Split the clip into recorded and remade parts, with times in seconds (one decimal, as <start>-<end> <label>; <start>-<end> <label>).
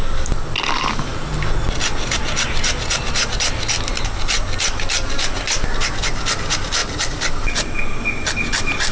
0.0-8.9 recorded